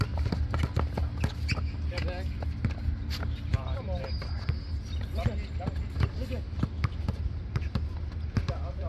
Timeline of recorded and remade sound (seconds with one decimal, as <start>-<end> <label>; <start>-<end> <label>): 0.0-8.9 recorded